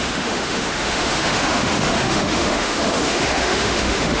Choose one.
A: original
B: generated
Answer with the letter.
B